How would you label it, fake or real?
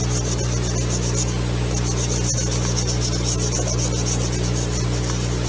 real